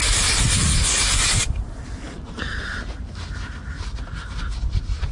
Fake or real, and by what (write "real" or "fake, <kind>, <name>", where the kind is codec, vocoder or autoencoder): real